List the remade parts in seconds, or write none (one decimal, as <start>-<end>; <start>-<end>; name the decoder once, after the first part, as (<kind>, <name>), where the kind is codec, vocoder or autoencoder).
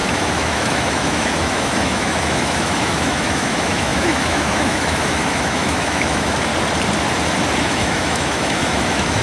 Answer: 0.0-6.5 (autoencoder, DAC-VAE); 7.6-9.2